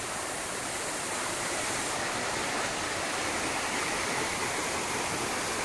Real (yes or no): yes